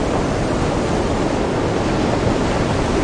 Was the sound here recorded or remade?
recorded